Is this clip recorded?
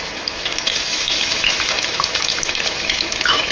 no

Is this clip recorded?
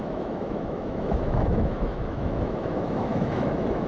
no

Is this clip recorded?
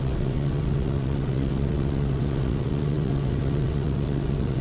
no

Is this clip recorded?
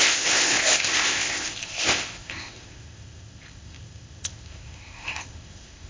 no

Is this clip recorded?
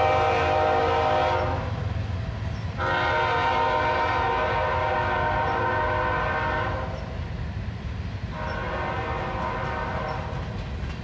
yes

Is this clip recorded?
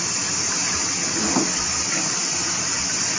yes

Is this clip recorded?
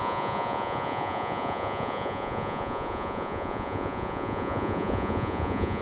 no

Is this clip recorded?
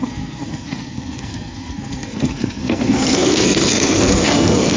no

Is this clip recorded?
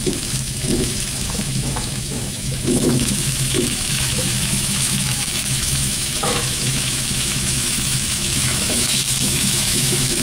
no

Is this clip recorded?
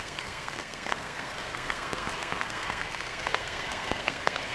no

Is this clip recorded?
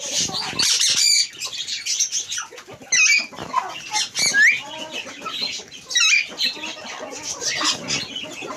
yes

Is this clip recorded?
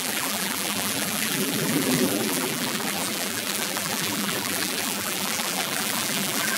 no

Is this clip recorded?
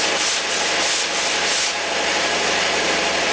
yes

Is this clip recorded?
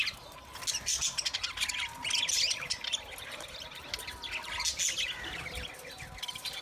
yes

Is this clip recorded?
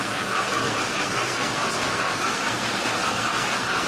no